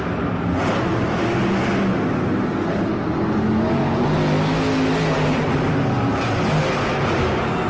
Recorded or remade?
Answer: recorded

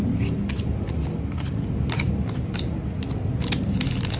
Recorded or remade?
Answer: recorded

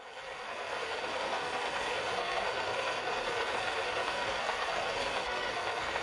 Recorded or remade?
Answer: remade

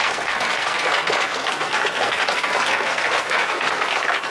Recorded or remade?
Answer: remade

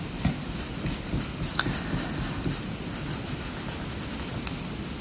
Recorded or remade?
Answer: recorded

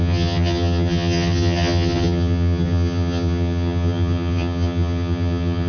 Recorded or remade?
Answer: remade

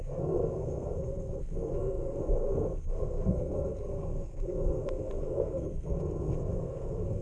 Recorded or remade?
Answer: remade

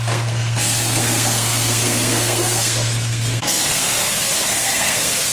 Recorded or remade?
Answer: remade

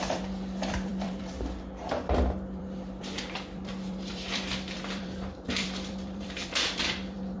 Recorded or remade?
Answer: remade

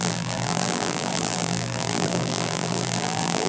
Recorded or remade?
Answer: remade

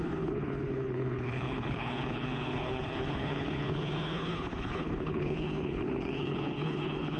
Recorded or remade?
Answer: remade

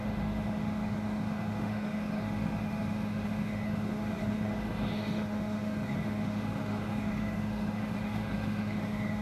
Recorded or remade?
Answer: remade